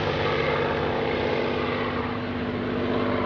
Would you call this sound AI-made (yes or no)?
no